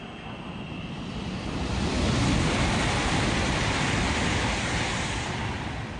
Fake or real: real